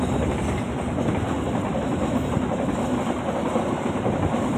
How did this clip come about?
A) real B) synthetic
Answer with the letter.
A